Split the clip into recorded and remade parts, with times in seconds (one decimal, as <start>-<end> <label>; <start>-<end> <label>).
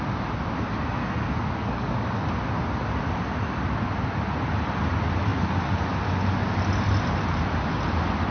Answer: 0.0-1.6 recorded; 1.6-2.2 remade; 2.2-8.3 recorded